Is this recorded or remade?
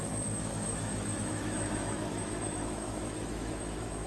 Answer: remade